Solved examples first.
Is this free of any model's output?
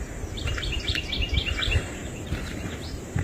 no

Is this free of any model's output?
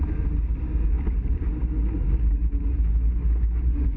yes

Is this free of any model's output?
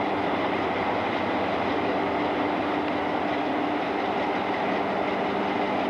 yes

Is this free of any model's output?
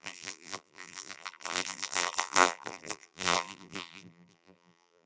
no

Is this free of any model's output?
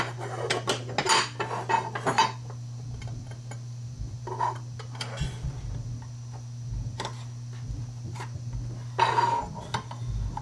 yes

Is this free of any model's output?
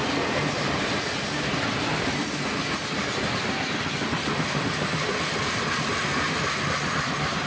no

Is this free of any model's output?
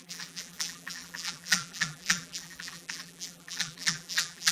no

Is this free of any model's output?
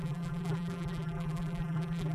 no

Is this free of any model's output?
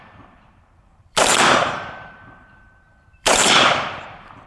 no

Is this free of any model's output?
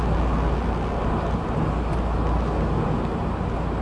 yes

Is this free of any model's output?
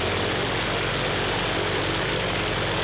yes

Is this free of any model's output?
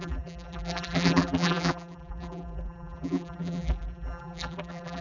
no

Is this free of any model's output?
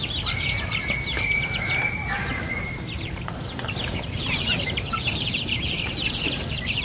no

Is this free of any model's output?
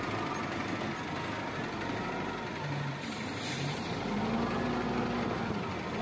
yes